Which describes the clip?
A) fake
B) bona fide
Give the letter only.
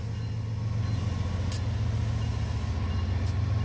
B